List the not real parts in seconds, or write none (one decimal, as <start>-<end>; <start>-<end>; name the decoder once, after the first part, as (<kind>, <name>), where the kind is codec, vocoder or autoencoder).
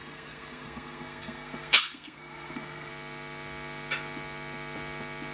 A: 0.0-2.9 (codec, SNAC)